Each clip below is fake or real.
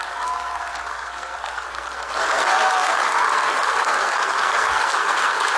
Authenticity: fake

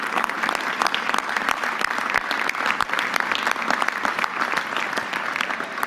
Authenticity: fake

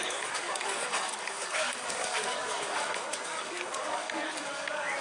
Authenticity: fake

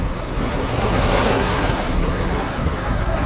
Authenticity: fake